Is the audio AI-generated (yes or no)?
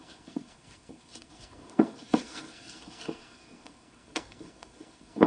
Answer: yes